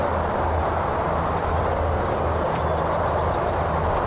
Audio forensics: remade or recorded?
recorded